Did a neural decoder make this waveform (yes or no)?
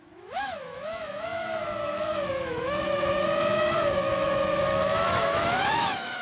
yes